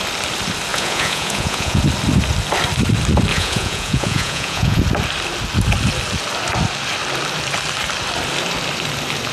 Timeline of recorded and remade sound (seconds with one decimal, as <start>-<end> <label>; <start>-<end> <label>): 0.0-0.7 recorded; 0.7-1.8 remade; 1.8-3.3 recorded; 3.3-4.8 remade; 4.8-9.3 recorded